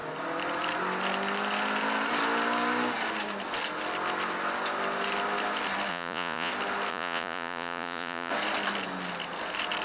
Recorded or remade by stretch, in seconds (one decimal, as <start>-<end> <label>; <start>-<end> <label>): 0.0-5.9 recorded; 5.9-6.5 remade; 6.5-6.9 recorded; 6.9-8.3 remade; 8.3-9.8 recorded